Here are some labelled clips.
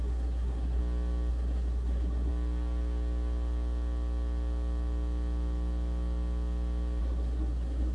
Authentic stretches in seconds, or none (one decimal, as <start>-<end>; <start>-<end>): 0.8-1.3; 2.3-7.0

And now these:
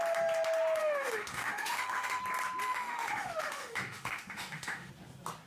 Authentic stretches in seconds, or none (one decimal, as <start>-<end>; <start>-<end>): 0.0-0.8; 2.2-2.6; 4.9-5.5

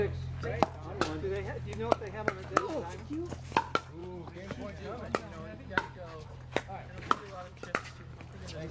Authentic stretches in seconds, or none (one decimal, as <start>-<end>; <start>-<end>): 0.0-8.7

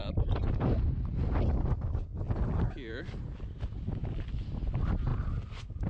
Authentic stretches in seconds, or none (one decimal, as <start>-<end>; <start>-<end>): 1.0-5.9

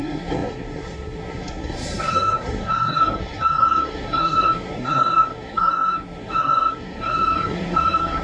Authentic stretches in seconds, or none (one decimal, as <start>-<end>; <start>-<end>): none

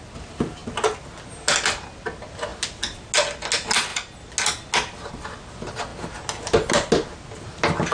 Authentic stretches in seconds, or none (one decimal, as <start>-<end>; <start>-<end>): 0.0-7.9

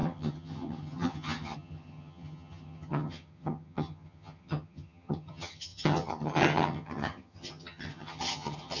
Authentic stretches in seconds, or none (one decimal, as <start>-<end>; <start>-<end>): none

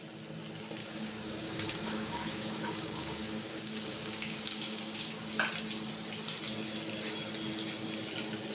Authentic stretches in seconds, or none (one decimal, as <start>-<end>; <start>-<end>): 0.0-0.8; 5.1-8.5